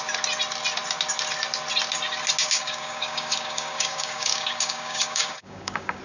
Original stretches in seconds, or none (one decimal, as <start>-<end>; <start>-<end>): 0.0-2.4